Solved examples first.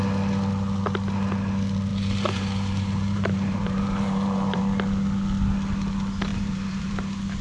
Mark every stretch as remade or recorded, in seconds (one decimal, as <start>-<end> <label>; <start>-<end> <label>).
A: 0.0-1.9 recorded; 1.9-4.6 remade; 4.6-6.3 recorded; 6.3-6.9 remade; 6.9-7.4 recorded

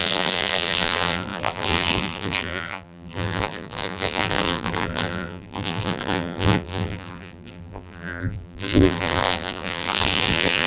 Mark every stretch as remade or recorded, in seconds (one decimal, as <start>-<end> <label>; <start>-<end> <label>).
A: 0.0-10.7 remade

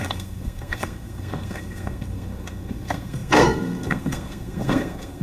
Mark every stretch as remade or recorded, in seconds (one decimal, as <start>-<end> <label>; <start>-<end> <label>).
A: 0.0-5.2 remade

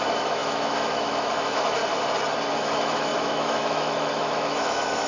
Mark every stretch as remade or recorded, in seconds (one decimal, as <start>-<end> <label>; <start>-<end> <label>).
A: 0.0-1.8 remade; 1.8-2.5 recorded; 2.5-5.1 remade

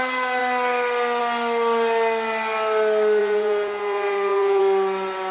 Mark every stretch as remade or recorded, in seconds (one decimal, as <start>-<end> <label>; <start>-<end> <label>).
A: 0.0-3.2 recorded; 3.2-4.6 remade; 4.6-5.3 recorded